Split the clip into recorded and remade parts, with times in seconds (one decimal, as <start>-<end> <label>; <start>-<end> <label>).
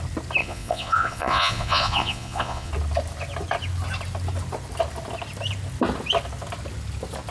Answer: 0.0-0.4 recorded; 0.4-2.7 remade; 2.7-7.3 recorded